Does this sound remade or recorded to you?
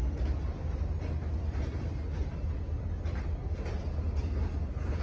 recorded